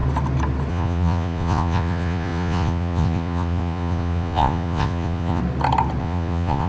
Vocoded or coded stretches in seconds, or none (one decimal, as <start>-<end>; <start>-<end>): 0.7-5.4; 6.0-6.7